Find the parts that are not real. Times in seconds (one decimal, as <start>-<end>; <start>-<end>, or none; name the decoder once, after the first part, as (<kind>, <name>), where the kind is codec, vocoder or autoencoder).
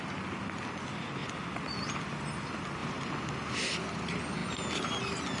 none